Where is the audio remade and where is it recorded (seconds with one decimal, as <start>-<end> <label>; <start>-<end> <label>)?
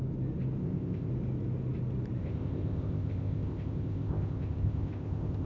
0.0-0.6 recorded; 0.6-1.1 remade; 1.1-2.2 recorded; 2.2-5.5 remade